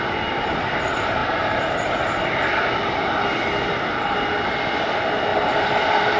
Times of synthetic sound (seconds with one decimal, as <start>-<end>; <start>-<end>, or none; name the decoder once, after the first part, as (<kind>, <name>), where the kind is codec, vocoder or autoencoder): 5.3-6.2 (vocoder, BigVGAN v2)